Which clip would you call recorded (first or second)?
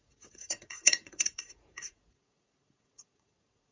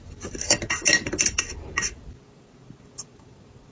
second